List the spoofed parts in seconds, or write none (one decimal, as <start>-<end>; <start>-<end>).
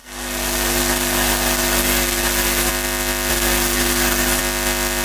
0.0-2.7; 3.3-4.4